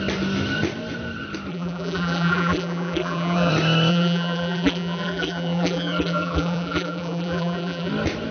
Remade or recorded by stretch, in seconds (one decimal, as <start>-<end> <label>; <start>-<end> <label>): 0.0-1.5 recorded; 1.5-3.5 remade; 3.5-3.9 recorded; 3.9-7.9 remade; 7.9-8.3 recorded